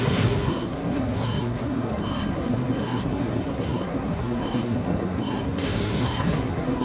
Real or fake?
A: fake